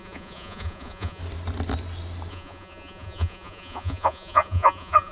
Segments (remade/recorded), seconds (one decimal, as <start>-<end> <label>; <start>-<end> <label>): 0.0-1.2 remade; 1.2-2.3 recorded; 2.3-5.1 remade